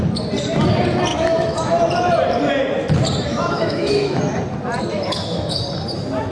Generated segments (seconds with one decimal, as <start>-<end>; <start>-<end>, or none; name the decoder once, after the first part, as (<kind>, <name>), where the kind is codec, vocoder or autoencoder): 1.1-1.8 (autoencoder, DAC-VAE); 3.3-4.2; 4.9-5.6